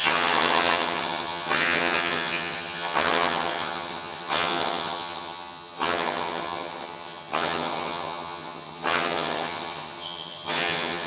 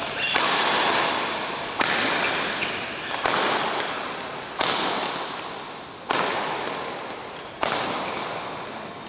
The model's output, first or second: first